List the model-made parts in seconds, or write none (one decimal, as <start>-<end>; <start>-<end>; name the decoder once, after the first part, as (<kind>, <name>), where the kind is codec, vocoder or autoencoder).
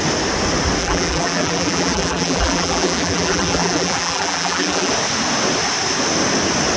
0.8-4.9 (vocoder, BigVGAN v2)